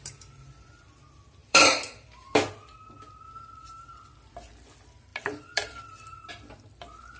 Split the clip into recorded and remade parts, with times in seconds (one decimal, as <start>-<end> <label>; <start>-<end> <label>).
0.0-1.4 recorded; 1.4-2.5 remade; 2.5-5.1 recorded; 5.1-6.3 remade; 6.3-7.2 recorded